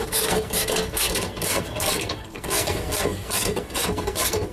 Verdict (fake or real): fake